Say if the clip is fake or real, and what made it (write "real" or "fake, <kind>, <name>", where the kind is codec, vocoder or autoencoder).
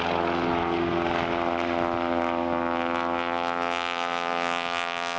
real